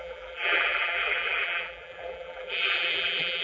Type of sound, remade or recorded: remade